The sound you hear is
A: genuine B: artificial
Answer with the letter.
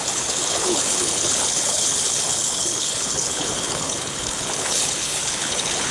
B